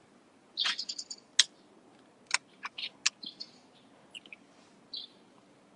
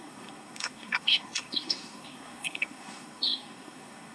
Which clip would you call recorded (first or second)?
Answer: first